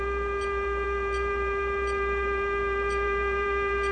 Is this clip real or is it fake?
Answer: fake